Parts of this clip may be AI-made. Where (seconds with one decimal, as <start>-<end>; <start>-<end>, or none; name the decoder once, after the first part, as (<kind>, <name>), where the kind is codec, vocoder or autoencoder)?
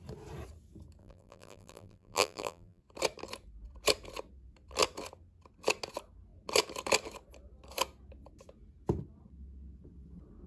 1.0-2.8 (vocoder, BigVGAN v2)